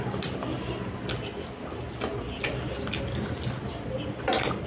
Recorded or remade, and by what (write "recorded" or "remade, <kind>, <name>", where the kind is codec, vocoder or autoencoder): recorded